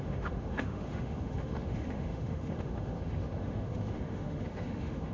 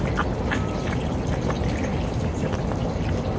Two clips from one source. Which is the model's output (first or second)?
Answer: first